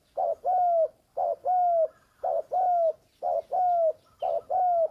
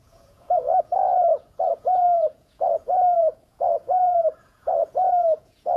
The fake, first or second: second